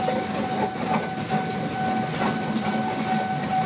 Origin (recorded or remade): recorded